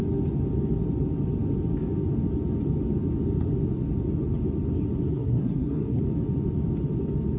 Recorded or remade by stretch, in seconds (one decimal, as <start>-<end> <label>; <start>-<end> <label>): 0.0-5.1 recorded; 5.1-6.0 remade; 6.0-7.4 recorded